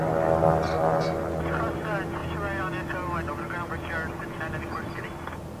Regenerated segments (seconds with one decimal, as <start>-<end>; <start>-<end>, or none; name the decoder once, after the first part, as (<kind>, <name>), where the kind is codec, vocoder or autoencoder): none